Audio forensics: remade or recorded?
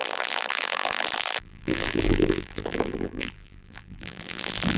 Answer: remade